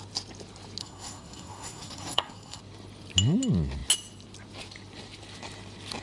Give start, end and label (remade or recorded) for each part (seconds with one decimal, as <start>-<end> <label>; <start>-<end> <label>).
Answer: 0.0-0.8 recorded; 0.8-2.6 remade; 2.6-6.0 recorded